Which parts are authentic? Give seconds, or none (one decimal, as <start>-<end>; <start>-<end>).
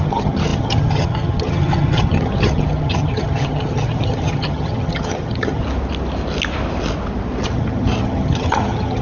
5.6-7.4